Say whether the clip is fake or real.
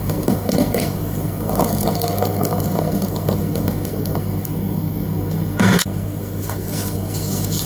fake